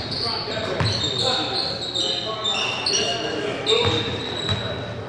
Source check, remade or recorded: recorded